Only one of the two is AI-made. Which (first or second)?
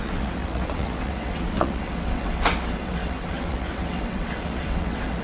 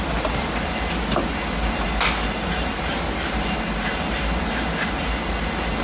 first